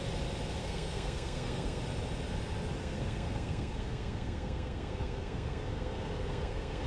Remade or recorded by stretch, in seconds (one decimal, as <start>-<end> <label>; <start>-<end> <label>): 0.0-0.6 recorded; 0.6-1.8 remade; 1.8-2.8 recorded; 2.8-6.9 remade